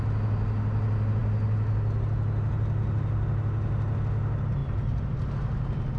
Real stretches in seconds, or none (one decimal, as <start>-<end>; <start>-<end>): 0.0-6.0